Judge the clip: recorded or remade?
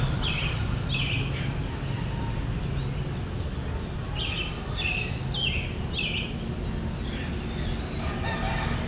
recorded